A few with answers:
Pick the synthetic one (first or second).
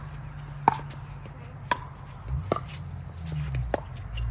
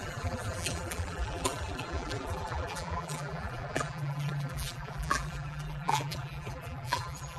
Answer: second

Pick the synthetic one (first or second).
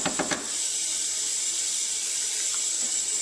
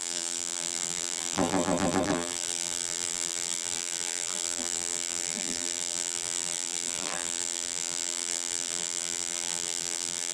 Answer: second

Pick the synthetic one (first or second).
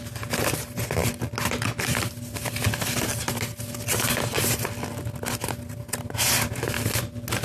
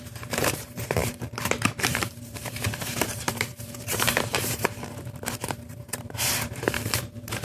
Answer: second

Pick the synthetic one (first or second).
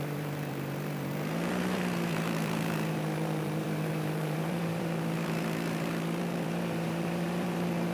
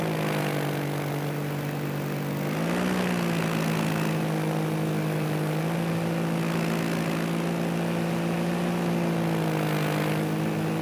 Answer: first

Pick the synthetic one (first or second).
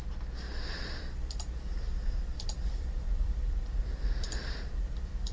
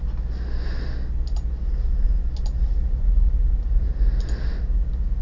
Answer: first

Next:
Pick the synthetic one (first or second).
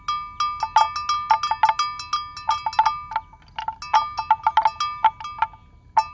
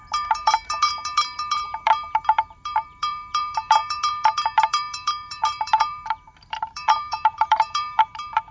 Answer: second